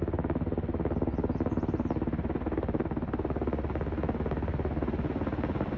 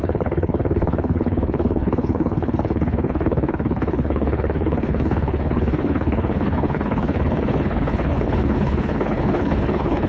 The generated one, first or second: second